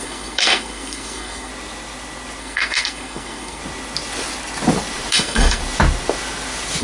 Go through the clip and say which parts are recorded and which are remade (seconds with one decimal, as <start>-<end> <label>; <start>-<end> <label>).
0.0-1.5 remade; 1.5-2.4 recorded; 2.4-3.6 remade; 3.6-5.1 recorded; 5.1-5.6 remade; 5.6-6.8 recorded